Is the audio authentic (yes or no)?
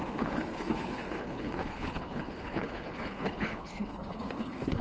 no